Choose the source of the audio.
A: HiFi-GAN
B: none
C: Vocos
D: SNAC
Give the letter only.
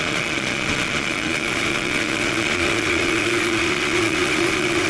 C